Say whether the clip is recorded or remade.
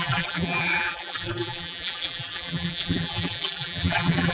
remade